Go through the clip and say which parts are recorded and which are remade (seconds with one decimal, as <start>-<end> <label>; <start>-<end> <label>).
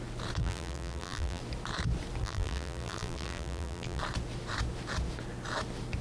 0.0-0.4 recorded; 0.4-1.4 remade; 1.4-2.2 recorded; 2.2-4.0 remade; 4.0-6.0 recorded